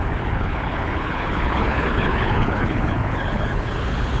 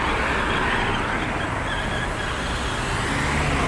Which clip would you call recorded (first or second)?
second